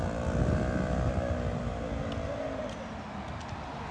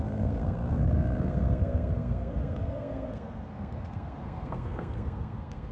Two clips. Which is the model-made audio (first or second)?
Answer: second